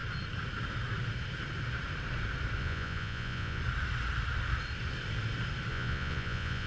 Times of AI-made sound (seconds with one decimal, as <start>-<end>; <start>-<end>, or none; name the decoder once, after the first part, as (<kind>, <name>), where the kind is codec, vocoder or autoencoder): 2.6-3.6 (vocoder, Vocos); 5.7-6.7